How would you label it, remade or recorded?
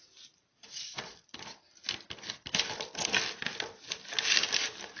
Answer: recorded